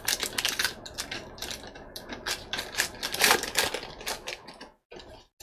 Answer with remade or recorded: recorded